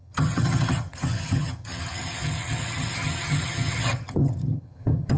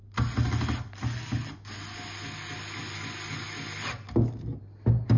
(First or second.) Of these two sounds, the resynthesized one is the first